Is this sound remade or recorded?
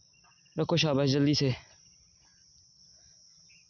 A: recorded